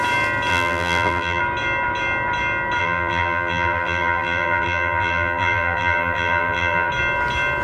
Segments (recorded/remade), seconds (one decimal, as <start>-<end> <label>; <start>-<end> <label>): 0.0-0.5 recorded; 0.5-1.4 remade; 1.4-2.8 recorded; 2.8-6.9 remade; 6.9-7.6 recorded